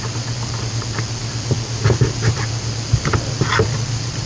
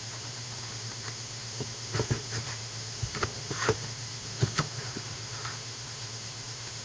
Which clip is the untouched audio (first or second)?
first